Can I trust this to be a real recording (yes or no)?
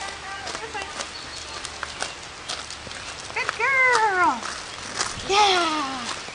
yes